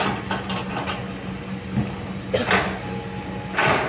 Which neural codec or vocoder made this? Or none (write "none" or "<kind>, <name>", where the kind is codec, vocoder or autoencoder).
none